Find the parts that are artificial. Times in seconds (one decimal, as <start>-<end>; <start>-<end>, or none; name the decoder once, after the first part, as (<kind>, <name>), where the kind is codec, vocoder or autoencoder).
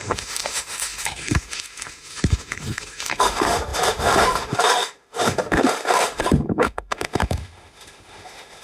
0.0-8.6 (autoencoder, DAC-VAE)